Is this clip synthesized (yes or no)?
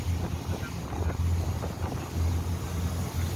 no